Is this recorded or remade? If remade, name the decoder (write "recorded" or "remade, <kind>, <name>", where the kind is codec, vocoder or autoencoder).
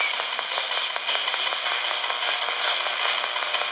recorded